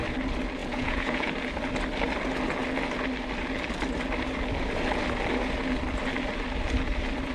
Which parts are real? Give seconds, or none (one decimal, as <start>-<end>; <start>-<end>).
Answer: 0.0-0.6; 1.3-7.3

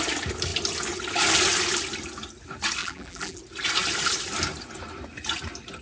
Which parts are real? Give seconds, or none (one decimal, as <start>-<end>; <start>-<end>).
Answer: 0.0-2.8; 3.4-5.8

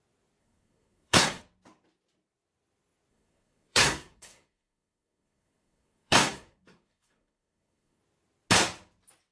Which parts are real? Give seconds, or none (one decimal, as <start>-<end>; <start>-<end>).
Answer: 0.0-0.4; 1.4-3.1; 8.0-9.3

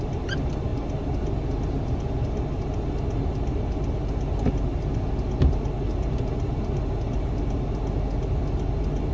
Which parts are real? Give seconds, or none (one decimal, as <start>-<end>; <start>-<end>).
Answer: 0.0-5.9; 7.9-9.1

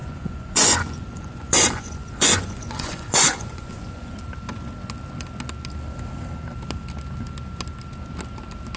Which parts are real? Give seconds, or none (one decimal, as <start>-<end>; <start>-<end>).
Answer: 4.2-8.8

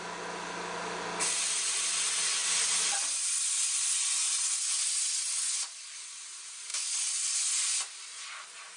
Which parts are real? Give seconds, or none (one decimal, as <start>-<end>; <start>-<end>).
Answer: 0.0-8.8